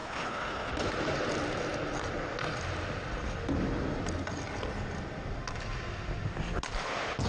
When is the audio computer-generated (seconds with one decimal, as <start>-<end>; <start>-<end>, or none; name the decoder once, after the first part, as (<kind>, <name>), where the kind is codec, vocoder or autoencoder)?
0.0-0.7 (codec, HILCodec)